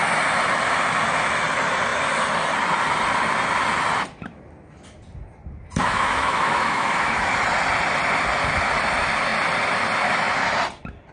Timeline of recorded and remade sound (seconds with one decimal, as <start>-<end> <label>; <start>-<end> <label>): 0.0-5.8 recorded; 5.8-7.3 remade; 7.3-11.1 recorded